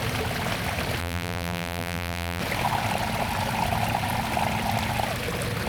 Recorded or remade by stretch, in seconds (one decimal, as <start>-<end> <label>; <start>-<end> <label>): 0.0-1.0 recorded; 1.0-2.4 remade; 2.4-5.7 recorded